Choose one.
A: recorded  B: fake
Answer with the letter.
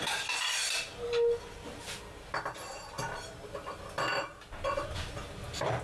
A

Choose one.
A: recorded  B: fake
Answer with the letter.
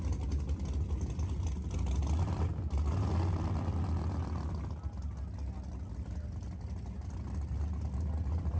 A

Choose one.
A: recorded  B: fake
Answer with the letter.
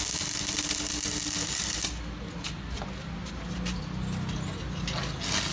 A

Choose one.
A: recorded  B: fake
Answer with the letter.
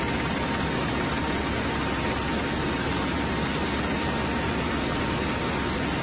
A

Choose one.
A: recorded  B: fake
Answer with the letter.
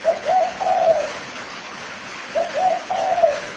B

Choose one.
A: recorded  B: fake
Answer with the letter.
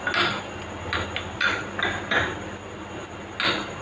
A